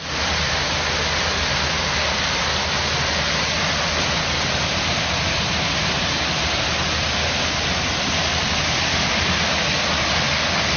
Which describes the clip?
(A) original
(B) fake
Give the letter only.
A